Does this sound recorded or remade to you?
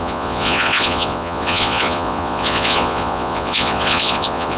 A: remade